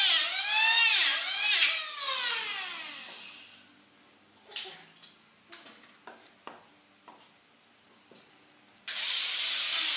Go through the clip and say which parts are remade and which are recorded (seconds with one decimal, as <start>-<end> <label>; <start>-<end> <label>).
0.0-10.0 recorded